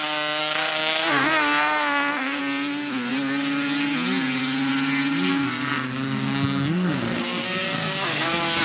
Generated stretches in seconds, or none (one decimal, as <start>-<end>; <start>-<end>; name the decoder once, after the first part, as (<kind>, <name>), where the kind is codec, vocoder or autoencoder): 0.4-2.4 (codec, SNAC); 5.3-8.6